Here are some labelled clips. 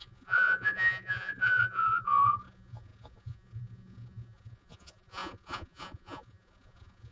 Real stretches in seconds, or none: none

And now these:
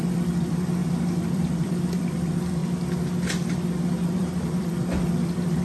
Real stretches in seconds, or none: 0.8-1.3; 2.6-3.9

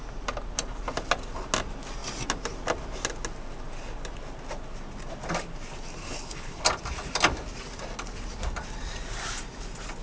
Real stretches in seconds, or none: 0.0-6.0; 6.6-10.0

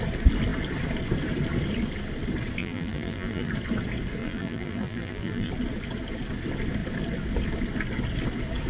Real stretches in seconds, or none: 0.0-2.6; 3.5-4.2; 5.5-8.7

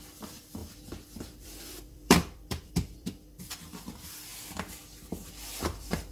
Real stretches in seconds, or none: 4.3-5.3

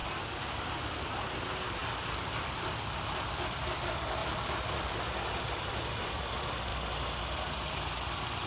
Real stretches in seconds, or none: 1.0-1.8; 2.6-4.2; 6.1-8.5